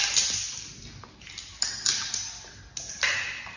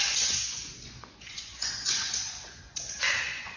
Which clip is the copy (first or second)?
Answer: second